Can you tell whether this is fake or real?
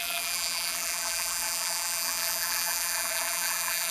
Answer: fake